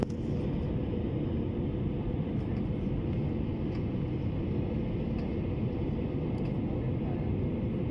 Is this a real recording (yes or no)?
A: yes